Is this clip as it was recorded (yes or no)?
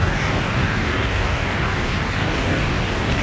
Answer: no